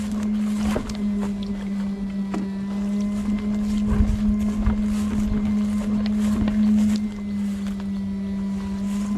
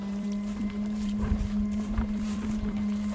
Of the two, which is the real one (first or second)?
first